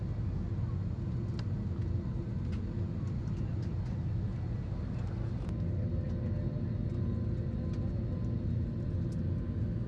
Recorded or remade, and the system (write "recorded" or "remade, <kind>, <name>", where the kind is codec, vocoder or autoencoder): recorded